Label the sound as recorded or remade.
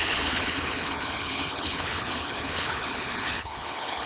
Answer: remade